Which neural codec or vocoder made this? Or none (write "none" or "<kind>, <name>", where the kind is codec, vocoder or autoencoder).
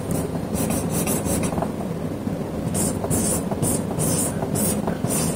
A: none